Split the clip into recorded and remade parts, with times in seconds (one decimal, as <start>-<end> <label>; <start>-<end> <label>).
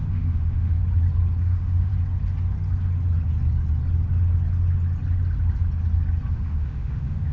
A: 0.0-0.8 remade; 0.8-1.4 recorded; 1.4-1.9 remade; 1.9-6.3 recorded; 6.3-7.3 remade